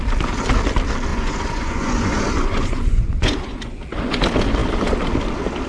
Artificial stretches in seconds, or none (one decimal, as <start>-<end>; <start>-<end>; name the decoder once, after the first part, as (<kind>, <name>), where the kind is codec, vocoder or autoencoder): 1.1-3.8 (vocoder, Vocos)